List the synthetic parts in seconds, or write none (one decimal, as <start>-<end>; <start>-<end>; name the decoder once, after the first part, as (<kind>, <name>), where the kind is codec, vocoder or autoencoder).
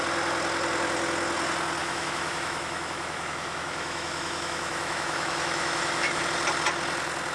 1.8-6.2 (autoencoder, DAC-VAE)